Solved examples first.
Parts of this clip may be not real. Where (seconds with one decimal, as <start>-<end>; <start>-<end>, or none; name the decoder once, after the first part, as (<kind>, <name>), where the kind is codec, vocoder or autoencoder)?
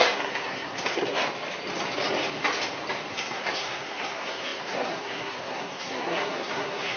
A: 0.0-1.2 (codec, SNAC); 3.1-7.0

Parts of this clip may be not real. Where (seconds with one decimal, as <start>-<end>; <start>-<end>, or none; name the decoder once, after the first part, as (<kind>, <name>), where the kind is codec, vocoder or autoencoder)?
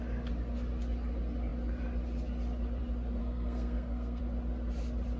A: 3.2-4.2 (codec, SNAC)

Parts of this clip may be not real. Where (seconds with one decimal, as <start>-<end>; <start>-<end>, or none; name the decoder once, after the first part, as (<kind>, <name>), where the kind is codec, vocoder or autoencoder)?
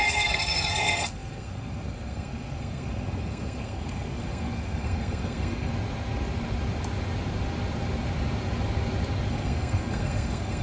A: 0.0-5.7 (codec, SNAC); 9.3-10.6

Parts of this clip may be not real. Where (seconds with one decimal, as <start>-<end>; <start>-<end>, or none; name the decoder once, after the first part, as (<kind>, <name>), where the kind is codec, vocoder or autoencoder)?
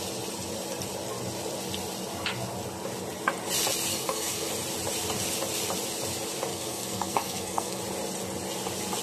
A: 3.9-4.5 (codec, SNAC); 6.5-7.8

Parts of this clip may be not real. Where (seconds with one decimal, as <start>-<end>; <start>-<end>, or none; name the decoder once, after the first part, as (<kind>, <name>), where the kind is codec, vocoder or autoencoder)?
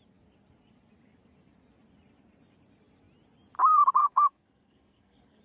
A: 4.0-5.4 (codec, SNAC)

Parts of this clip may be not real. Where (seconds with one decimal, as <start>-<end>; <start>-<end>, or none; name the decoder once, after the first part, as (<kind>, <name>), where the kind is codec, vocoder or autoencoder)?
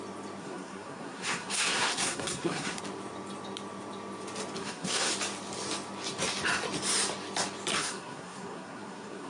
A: 0.4-2.8 (codec, SNAC); 4.6-5.1; 7.7-9.3